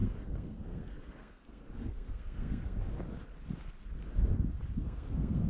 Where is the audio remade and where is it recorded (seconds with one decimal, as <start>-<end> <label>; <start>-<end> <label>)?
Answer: 0.0-2.8 remade; 2.8-4.8 recorded; 4.8-5.5 remade